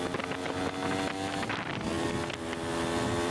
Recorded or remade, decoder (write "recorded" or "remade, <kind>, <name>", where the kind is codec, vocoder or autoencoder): recorded